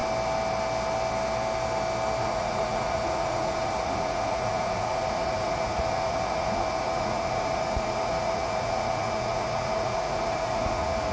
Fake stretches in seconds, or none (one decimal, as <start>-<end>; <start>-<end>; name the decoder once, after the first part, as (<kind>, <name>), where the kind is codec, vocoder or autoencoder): 2.2-11.1 (vocoder, Vocos)